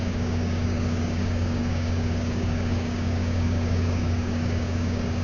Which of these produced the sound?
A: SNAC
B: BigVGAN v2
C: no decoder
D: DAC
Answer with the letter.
D